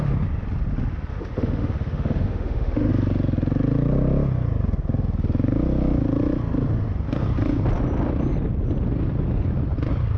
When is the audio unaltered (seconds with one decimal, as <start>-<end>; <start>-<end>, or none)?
0.0-1.1; 2.9-10.2